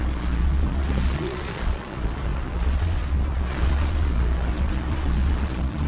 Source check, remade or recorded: remade